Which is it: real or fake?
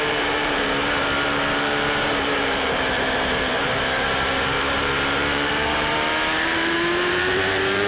fake